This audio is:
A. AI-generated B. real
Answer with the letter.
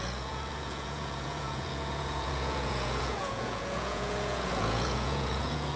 A